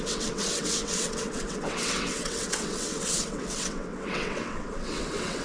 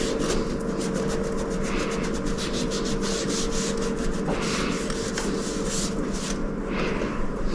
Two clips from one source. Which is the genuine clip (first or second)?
second